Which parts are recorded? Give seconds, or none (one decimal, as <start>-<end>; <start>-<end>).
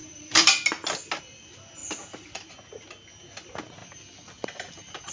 0.5-1.8; 2.5-5.1